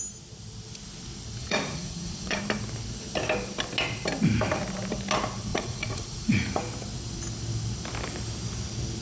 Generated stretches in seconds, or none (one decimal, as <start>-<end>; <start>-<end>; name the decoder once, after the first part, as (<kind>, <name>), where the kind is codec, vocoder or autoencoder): 1.4-2.4 (vocoder, Vocos); 5.5-6.6

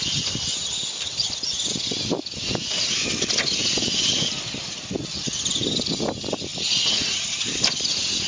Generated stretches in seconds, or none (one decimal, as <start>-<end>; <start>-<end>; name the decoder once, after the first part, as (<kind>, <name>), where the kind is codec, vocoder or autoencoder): none

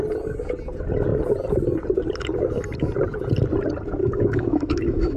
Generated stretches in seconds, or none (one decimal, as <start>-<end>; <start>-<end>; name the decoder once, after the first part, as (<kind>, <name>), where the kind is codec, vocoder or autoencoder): 4.0-5.2 (autoencoder, DAC-VAE)

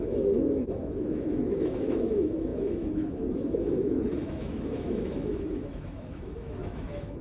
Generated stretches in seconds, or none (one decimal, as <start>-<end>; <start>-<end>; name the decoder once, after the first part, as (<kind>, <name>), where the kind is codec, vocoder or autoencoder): 0.0-7.2 (autoencoder, DAC-VAE)

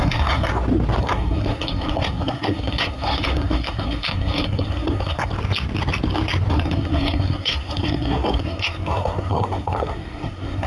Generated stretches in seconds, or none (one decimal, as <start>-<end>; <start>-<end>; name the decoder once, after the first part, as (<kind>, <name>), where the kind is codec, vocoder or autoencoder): 0.0-0.5 (codec, SNAC); 1.0-5.3; 6.5-10.7

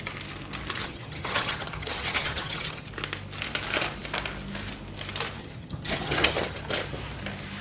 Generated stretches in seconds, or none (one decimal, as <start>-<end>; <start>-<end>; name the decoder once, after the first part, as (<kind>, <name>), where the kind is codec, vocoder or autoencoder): 0.8-2.9 (vocoder, HiFi-GAN); 5.4-6.6

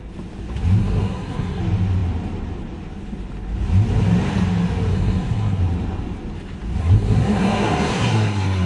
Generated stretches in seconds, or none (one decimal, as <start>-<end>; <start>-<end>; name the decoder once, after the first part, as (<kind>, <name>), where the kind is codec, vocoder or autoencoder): 0.8-1.6 (codec, SNAC); 4.9-5.6; 6.8-8.7

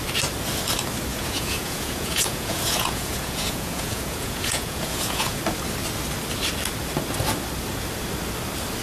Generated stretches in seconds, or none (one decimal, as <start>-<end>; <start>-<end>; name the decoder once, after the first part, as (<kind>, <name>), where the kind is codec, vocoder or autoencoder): 1.1-5.4 (vocoder, Vocos)